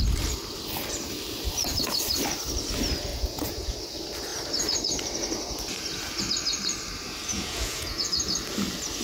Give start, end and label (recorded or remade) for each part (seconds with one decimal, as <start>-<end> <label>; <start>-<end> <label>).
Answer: 0.0-3.1 recorded; 3.1-3.8 remade; 3.8-7.3 recorded; 7.3-8.3 remade; 8.3-9.0 recorded